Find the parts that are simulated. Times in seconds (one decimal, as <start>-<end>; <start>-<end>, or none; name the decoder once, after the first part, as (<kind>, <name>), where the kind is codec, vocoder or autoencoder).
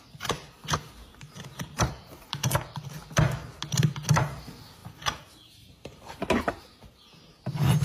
1.1-2.9 (vocoder, BigVGAN v2); 4.8-6.6